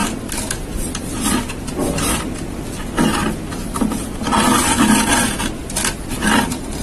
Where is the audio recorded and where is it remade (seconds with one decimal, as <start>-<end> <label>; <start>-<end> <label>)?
0.0-6.8 recorded